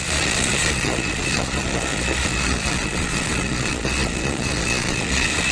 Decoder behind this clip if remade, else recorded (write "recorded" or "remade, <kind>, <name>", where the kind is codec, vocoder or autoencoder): remade, vocoder, Vocos